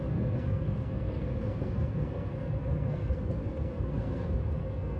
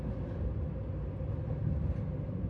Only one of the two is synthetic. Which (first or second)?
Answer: first